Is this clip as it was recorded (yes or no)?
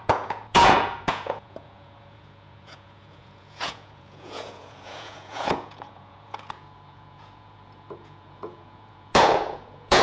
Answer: no